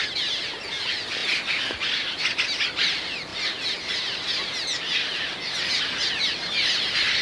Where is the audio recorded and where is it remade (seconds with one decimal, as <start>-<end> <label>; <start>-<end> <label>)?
0.0-7.2 recorded